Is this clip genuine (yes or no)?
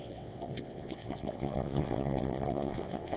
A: no